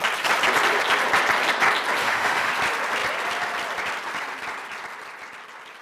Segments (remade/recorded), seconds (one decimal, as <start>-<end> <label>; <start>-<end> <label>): 0.0-2.0 recorded; 2.0-2.5 remade; 2.5-5.8 recorded

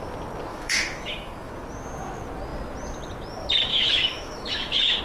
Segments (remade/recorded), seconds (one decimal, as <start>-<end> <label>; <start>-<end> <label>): 0.0-0.5 recorded; 0.5-1.5 remade; 1.5-3.7 recorded; 3.7-5.0 remade

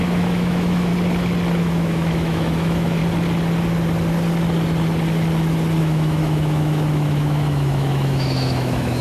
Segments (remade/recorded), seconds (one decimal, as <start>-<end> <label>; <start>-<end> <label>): 0.0-0.9 remade; 0.9-1.6 recorded; 1.6-3.0 remade; 3.0-5.8 recorded; 5.8-9.0 remade

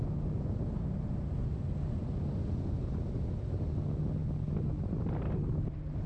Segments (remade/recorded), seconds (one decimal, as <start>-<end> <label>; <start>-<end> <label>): 0.0-6.1 recorded

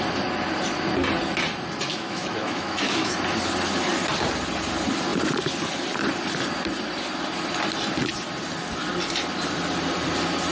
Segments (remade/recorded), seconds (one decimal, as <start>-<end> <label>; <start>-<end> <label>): 0.0-1.9 recorded; 1.9-3.1 remade; 3.1-10.5 recorded

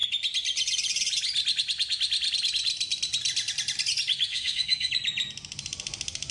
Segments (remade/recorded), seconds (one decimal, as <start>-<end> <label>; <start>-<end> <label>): 0.0-4.3 recorded; 4.3-4.9 remade; 4.9-6.3 recorded

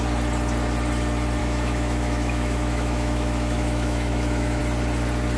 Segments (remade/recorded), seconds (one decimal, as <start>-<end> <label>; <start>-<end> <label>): 0.0-1.4 recorded; 1.4-4.6 remade; 4.6-5.4 recorded

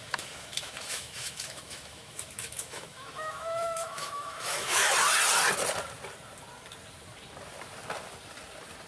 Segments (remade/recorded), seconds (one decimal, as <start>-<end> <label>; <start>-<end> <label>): 0.0-4.9 remade; 4.9-8.9 recorded